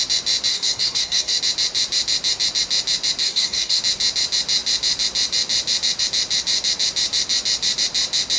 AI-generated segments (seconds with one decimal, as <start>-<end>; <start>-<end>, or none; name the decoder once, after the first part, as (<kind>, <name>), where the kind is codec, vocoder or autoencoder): 0.5-1.4 (codec, DAC); 3.2-3.8